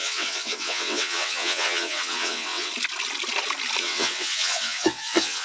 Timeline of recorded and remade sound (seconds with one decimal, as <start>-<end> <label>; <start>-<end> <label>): 0.0-2.7 remade; 2.7-3.8 recorded; 3.8-5.4 remade